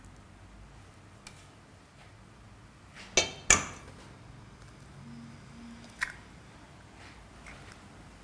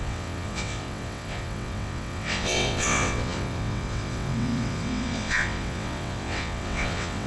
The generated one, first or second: second